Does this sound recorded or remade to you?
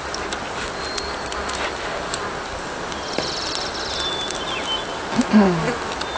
recorded